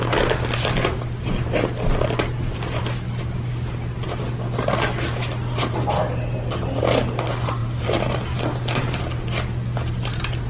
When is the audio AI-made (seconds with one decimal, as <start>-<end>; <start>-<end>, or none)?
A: 7.6-9.0